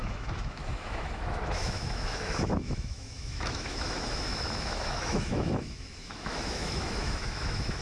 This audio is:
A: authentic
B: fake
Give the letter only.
B